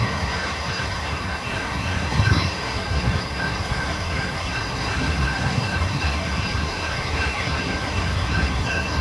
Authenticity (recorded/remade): remade